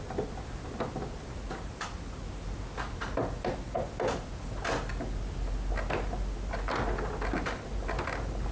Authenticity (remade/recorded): recorded